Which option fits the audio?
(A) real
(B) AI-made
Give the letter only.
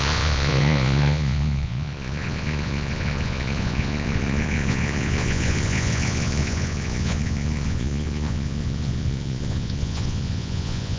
B